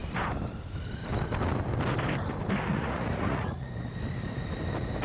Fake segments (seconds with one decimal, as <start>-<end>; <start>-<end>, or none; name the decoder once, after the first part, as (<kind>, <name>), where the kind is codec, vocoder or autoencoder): 2.7-3.9 (vocoder, Vocos)